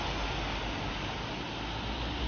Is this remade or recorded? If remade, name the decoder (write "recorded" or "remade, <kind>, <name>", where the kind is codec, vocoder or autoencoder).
recorded